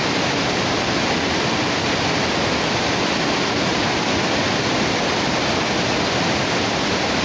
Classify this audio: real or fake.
real